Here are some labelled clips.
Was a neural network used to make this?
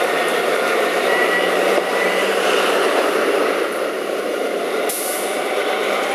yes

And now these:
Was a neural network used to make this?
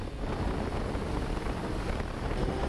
no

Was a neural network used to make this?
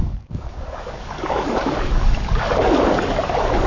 yes